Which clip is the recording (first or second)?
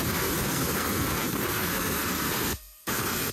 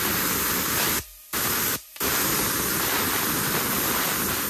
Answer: second